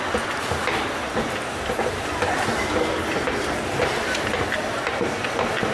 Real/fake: real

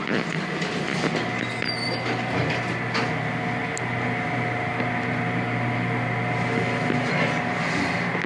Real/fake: real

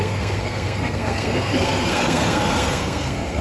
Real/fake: fake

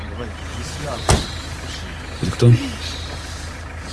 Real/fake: real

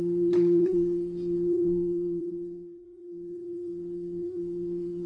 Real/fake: fake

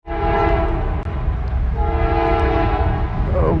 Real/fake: real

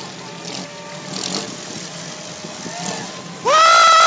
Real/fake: real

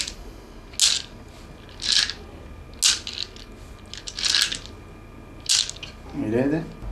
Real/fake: real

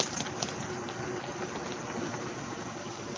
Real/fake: real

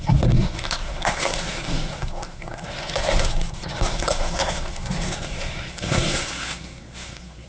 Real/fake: fake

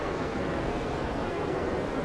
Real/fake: fake